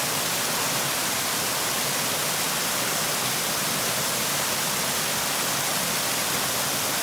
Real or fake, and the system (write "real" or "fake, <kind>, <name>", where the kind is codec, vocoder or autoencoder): real